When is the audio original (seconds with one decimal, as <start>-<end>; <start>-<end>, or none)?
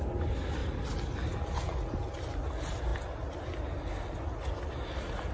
0.0-5.3